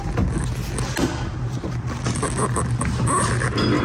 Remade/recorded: recorded